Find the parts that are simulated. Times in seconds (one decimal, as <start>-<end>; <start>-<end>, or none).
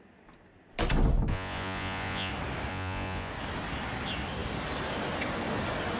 1.3-2.3; 2.7-3.3